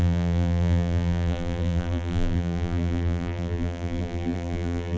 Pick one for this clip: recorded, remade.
remade